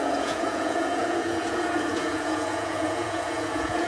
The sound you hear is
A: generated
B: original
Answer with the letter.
A